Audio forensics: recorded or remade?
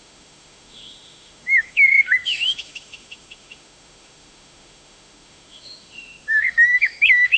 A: remade